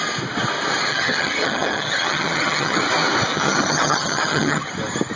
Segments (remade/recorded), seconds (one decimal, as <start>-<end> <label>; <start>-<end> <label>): 0.0-0.9 recorded; 0.9-2.8 remade; 2.8-3.3 recorded; 3.3-4.7 remade; 4.7-5.2 recorded